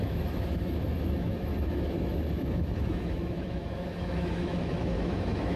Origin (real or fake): fake